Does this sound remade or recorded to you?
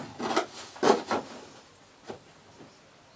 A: recorded